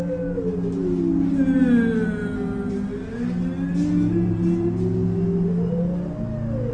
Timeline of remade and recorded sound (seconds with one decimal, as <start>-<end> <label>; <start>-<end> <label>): 0.0-6.7 recorded